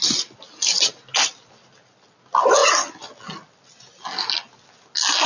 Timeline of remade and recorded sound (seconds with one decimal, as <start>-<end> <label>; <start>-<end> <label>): 0.0-5.3 recorded